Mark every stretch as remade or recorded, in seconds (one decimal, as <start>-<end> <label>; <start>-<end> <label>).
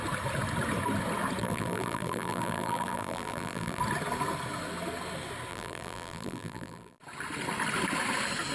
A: 0.0-1.4 recorded; 1.4-3.8 remade; 3.8-5.5 recorded; 5.5-7.0 remade; 7.0-8.5 recorded